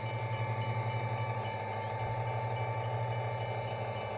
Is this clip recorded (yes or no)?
yes